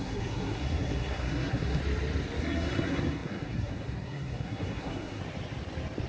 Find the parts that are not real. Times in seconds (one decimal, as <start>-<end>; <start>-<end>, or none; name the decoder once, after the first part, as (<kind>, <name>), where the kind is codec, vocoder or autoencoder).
0.0-1.8 (codec, SNAC); 2.4-5.2